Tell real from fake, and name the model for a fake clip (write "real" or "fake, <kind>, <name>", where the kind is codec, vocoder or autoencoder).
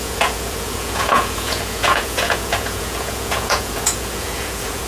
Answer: fake, vocoder, Vocos